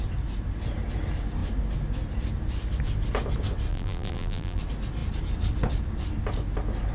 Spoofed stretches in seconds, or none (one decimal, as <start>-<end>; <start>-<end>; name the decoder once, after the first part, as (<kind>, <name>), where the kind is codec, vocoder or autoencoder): 3.7-4.6 (vocoder, BigVGAN v2)